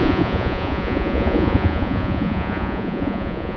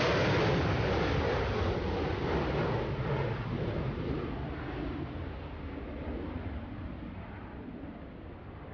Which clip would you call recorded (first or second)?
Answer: second